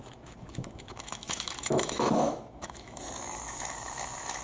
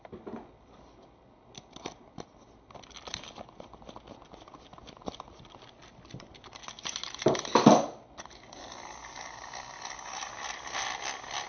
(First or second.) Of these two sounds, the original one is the second